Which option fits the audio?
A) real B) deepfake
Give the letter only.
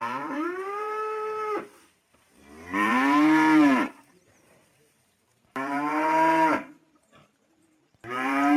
B